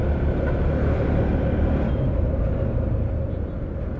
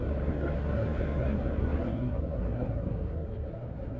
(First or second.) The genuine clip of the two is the first